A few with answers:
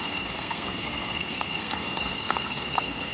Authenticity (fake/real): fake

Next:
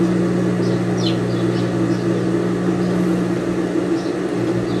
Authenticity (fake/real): real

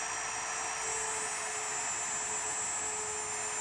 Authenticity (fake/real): real